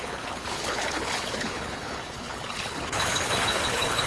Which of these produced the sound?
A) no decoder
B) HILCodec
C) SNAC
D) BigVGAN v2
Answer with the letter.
B